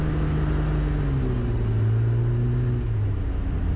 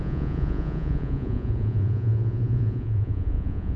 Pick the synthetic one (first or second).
second